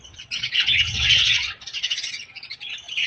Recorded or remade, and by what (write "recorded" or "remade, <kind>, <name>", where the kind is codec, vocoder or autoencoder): remade, vocoder, WaveNeXt